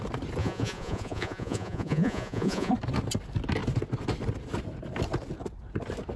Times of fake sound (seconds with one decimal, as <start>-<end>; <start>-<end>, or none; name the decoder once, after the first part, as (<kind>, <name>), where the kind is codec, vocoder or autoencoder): 0.4-2.7 (vocoder, Vocos)